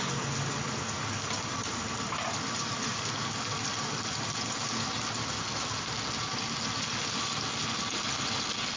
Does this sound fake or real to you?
real